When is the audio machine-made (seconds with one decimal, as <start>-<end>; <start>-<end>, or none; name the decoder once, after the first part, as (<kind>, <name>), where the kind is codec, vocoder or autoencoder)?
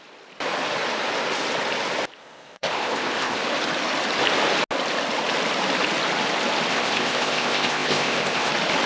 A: 2.2-3.4 (codec, ZipCodec); 6.7-8.5